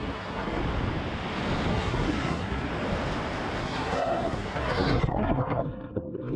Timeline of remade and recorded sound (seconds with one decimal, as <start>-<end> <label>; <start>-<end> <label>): 0.0-0.6 remade; 0.6-1.7 recorded; 1.7-2.7 remade; 2.7-3.6 recorded; 3.6-6.4 remade